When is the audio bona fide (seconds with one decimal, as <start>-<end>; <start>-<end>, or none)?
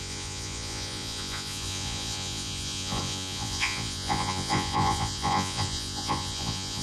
none